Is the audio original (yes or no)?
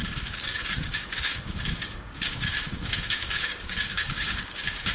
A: no